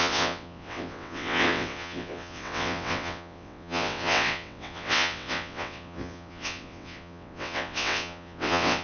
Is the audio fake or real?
fake